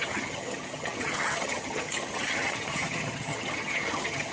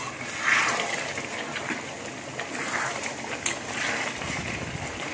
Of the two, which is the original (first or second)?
second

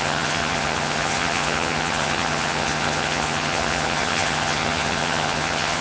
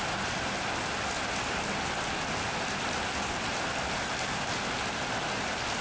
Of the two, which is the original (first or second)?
second